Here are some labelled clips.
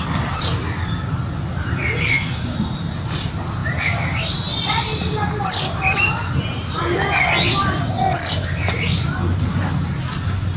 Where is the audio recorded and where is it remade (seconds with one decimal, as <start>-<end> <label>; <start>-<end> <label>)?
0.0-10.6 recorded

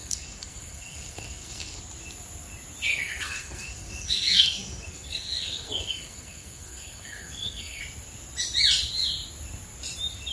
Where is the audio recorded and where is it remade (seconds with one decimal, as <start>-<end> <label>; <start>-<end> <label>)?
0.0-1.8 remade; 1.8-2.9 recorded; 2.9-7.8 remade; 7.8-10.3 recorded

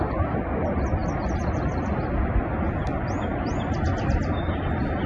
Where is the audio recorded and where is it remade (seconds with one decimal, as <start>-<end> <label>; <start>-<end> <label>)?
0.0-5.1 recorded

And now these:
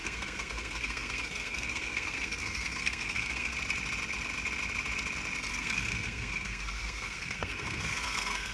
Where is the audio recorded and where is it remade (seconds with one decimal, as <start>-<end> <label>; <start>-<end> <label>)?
0.0-3.5 remade; 3.5-5.5 recorded; 5.5-8.5 remade